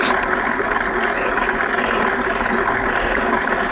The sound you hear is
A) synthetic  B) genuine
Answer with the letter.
B